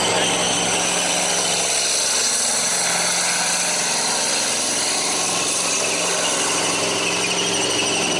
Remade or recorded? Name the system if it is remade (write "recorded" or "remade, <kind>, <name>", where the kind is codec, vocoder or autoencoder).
recorded